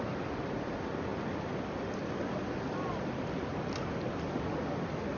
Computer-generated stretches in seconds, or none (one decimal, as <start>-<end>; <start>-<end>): none